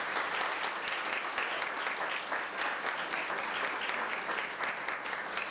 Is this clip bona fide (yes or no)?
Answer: yes